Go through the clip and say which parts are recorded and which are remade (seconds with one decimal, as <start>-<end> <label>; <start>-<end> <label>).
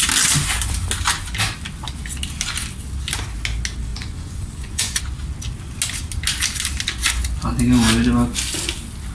0.0-3.9 recorded; 3.9-5.0 remade; 5.0-9.1 recorded